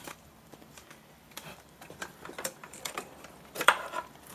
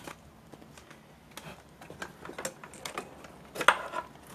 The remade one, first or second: first